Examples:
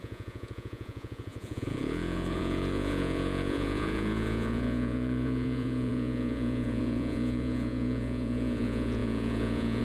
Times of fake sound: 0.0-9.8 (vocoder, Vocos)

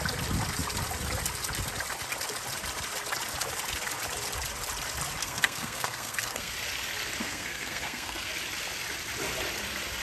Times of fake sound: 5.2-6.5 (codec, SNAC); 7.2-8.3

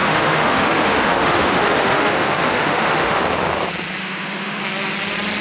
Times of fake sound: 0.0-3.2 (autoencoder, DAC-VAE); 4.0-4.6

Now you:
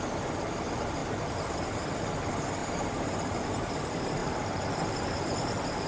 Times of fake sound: 1.0-1.9 (vocoder, BigVGAN v2); 2.6-3.7; 4.2-5.9

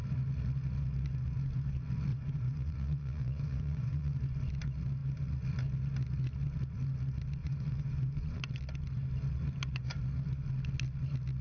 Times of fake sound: 2.1-4.2 (vocoder, Vocos); 7.4-8.4

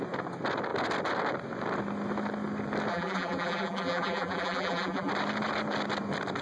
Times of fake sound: 2.9-5.1 (vocoder, BigVGAN v2)